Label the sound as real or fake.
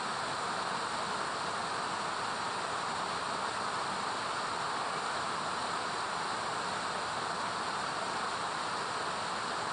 real